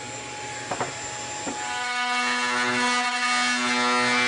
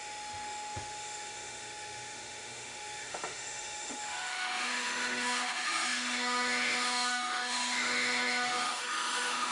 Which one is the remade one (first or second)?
second